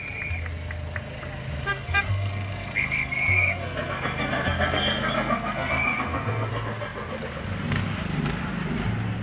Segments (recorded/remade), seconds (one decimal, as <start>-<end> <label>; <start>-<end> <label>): 0.0-1.7 recorded; 1.7-6.5 remade; 6.5-9.2 recorded